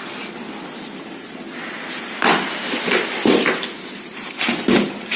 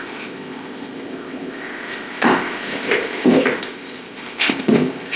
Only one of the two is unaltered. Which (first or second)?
first